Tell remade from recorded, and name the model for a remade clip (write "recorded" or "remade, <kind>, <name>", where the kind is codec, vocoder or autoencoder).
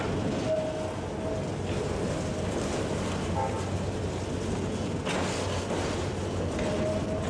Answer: recorded